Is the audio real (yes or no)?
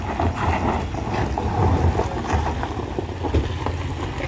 yes